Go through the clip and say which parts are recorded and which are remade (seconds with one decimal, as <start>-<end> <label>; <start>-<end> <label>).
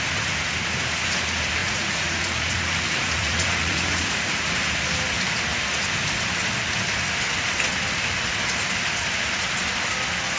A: 0.0-1.6 recorded; 1.6-4.5 remade; 4.5-10.4 recorded